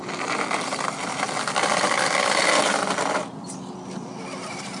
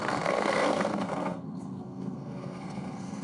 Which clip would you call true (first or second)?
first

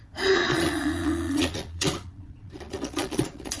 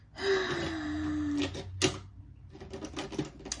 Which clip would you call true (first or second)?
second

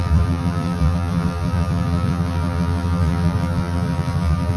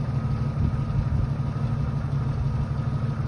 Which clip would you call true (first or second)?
second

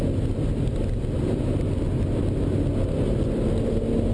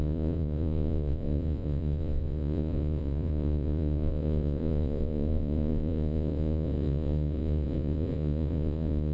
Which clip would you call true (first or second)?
first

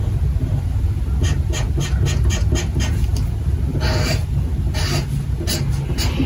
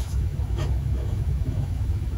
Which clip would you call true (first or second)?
first